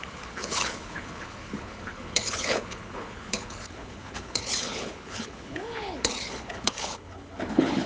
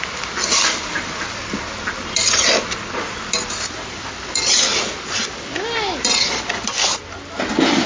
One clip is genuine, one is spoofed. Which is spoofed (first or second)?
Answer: first